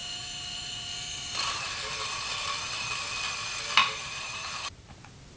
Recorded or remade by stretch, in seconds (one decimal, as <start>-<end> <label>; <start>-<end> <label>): 0.0-1.7 remade; 1.7-3.8 recorded; 3.8-4.9 remade; 4.9-5.4 recorded